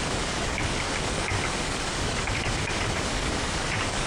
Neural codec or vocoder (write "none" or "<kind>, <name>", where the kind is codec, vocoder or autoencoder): codec, DAC